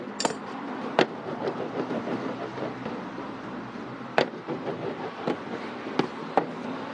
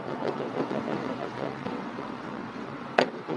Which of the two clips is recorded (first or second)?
first